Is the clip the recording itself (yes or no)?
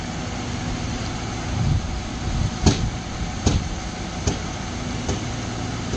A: yes